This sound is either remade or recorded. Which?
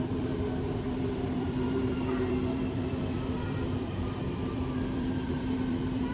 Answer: remade